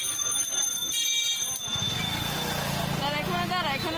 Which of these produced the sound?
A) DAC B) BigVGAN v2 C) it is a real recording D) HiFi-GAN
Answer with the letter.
C